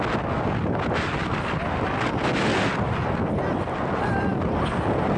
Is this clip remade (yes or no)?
no